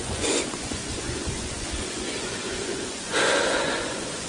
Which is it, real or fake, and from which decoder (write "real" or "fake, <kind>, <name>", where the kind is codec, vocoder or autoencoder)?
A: fake, vocoder, Vocos